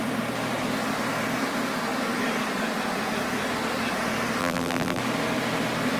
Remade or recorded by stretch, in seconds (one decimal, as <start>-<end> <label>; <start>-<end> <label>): 0.0-4.4 recorded; 4.4-5.0 remade; 5.0-6.0 recorded